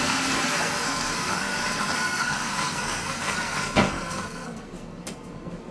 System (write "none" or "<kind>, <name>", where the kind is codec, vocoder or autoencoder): codec, SNAC